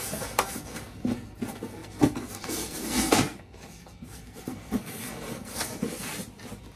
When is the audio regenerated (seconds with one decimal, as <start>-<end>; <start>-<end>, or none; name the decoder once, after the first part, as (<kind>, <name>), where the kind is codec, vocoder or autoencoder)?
0.0-6.1 (codec, SNAC)